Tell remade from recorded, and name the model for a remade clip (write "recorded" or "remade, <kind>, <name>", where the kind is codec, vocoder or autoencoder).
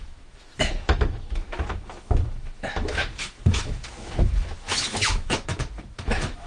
remade, autoencoder, DAC-VAE